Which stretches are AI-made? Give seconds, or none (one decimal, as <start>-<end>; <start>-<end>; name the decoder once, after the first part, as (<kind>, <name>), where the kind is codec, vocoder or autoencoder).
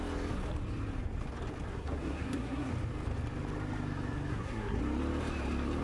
1.7-2.7 (codec, SNAC); 4.3-4.8